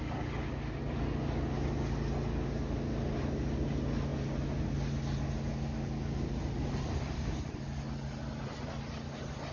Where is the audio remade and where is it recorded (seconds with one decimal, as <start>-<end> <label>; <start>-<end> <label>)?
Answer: 0.0-9.5 recorded